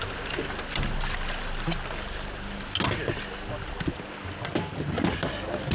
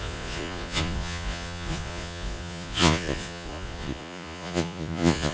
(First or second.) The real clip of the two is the first